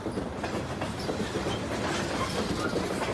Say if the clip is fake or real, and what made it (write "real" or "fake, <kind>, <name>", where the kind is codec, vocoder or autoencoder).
real